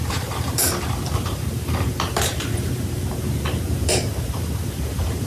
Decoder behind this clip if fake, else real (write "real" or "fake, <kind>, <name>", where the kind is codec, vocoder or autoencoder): fake, vocoder, BigVGAN v2